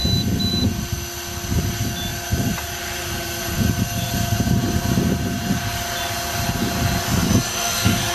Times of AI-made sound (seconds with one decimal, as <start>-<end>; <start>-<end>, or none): 0.0-0.8; 2.1-5.6